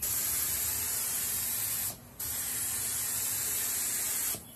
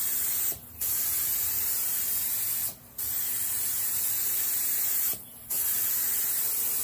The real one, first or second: first